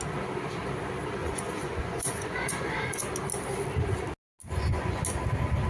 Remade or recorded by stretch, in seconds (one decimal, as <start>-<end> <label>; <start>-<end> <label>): 0.0-1.2 recorded; 1.2-3.0 remade; 3.0-4.4 recorded; 4.4-5.0 remade; 5.0-5.7 recorded